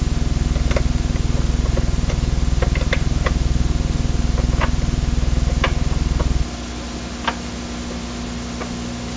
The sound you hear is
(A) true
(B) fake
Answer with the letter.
A